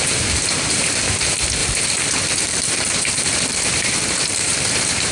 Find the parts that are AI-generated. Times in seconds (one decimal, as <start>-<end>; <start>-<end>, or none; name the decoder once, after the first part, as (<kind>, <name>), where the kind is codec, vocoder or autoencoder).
1.6-5.1 (vocoder, BigVGAN v2)